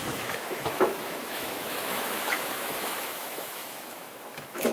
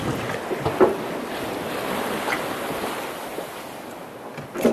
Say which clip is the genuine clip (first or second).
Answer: second